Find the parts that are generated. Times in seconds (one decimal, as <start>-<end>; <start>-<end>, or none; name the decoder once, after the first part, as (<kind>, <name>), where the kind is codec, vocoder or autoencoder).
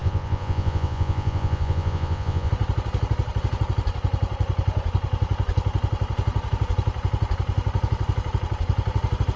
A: 0.0-2.5 (vocoder, Vocos)